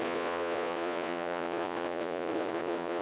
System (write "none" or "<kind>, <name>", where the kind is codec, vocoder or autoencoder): vocoder, Vocos